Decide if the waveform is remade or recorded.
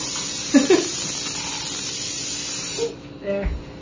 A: recorded